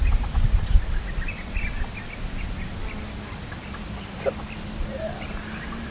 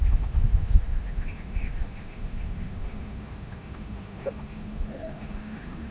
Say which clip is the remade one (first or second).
second